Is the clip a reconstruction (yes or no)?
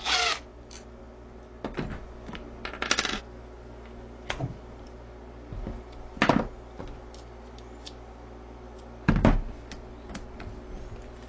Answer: no